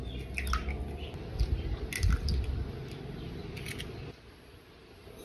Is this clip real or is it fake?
real